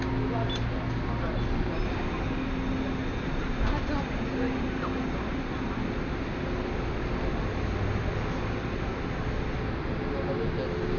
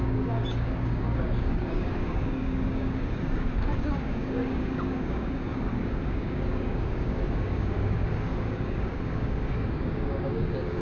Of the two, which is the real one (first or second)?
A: first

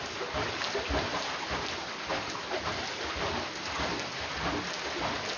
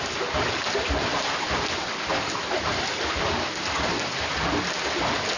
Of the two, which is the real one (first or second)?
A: first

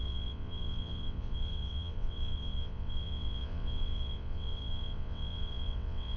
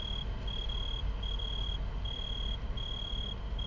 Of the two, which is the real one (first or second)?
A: second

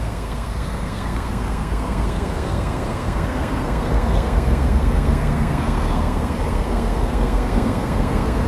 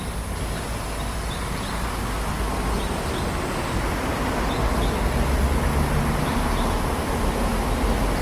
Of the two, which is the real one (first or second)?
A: second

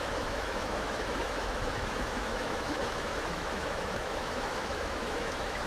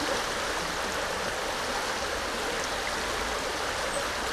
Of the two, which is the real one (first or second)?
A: second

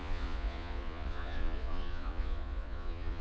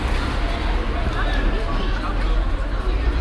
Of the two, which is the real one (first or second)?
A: second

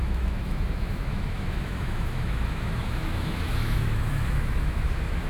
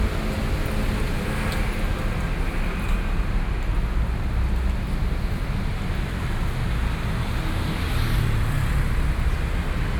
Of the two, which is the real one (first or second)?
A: second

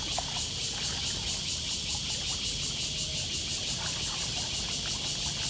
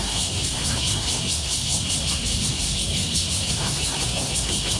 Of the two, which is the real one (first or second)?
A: first